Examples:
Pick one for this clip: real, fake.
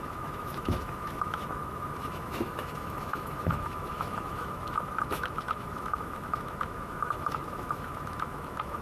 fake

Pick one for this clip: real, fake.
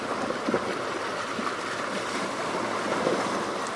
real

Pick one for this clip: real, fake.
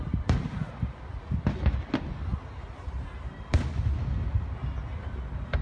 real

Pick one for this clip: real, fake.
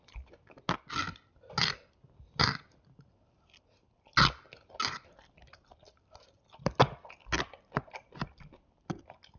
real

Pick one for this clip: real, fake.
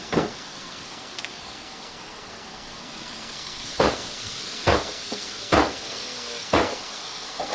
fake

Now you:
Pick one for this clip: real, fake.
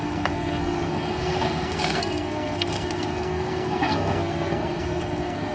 fake